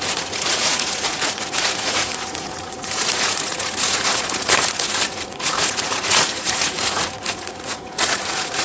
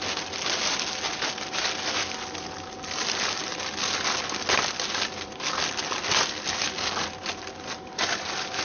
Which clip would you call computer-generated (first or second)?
first